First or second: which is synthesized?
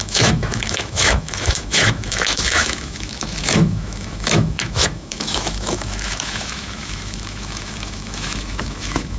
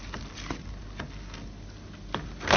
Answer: first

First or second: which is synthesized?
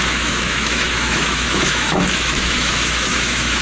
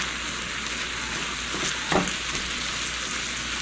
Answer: first